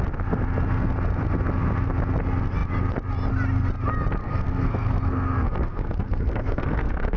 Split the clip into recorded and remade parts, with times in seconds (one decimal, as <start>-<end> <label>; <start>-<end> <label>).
0.0-4.2 recorded; 4.2-7.2 remade